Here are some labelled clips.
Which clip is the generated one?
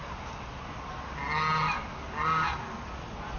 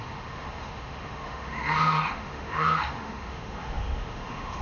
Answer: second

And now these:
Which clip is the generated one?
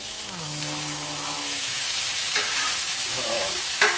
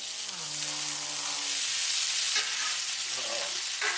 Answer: first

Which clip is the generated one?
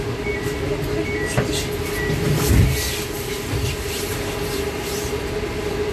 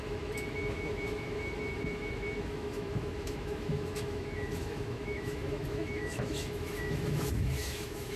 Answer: second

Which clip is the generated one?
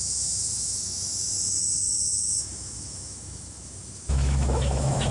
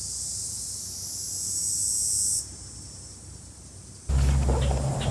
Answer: first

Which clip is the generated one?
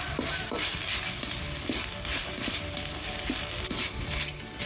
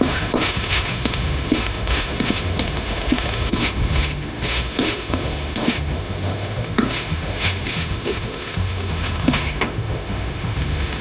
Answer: second